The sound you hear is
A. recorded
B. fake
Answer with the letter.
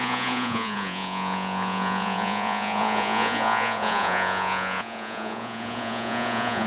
B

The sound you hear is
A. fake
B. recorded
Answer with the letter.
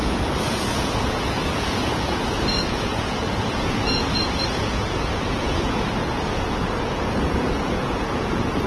A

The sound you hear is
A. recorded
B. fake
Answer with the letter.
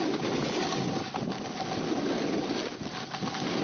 A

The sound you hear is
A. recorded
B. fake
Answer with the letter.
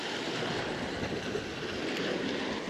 A